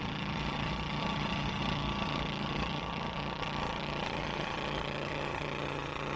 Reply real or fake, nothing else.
fake